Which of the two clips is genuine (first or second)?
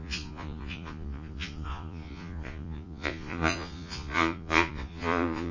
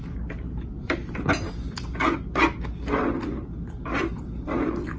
second